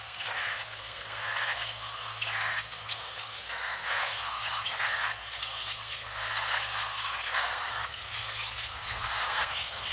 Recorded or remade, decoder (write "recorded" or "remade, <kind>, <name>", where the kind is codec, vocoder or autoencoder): remade, codec, SNAC